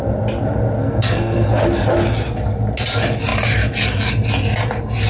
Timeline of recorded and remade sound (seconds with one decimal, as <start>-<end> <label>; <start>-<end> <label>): 0.0-0.8 recorded; 0.8-1.5 remade; 1.5-5.1 recorded